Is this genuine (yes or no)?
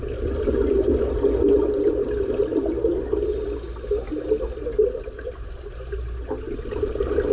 yes